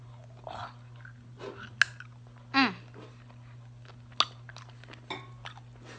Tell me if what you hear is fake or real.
real